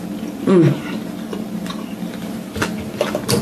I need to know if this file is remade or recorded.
recorded